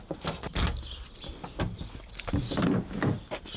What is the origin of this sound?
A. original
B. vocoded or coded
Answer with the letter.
A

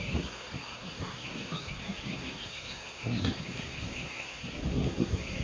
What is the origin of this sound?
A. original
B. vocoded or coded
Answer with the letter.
B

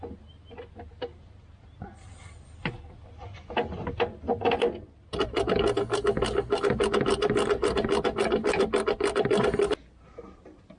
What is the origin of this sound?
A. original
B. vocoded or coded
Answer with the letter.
A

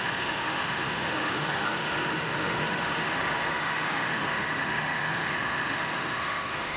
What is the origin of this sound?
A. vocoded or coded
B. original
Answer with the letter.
A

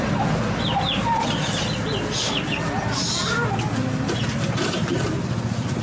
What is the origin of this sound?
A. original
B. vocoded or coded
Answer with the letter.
A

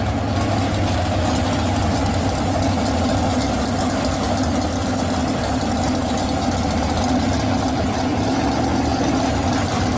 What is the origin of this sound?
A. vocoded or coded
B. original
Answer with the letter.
B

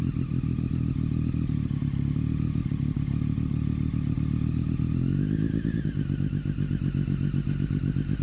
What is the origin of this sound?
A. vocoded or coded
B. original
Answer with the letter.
B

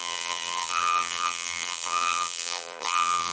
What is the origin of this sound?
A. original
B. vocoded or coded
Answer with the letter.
B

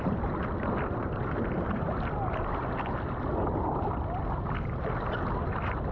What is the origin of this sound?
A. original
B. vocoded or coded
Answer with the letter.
A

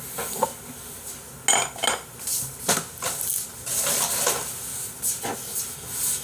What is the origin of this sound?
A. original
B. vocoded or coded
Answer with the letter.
A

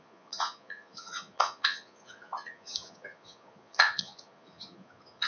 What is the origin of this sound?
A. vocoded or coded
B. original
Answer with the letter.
A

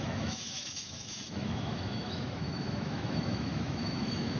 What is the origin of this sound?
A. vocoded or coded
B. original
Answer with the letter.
A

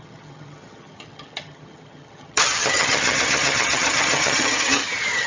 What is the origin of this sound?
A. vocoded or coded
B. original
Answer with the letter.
A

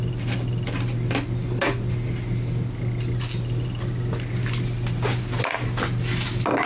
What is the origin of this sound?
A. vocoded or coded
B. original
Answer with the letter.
B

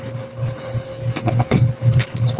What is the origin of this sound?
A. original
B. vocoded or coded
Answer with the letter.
B